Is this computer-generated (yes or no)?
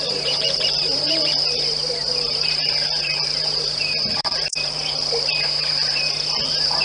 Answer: yes